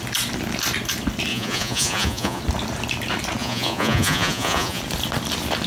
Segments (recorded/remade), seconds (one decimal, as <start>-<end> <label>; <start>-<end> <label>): 0.0-1.3 recorded; 1.3-2.4 remade; 2.4-3.4 recorded; 3.4-4.8 remade; 4.8-5.7 recorded